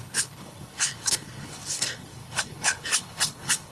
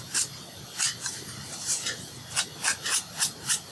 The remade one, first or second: first